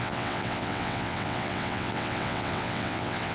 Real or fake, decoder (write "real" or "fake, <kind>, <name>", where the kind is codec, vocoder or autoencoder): fake, vocoder, WaveNeXt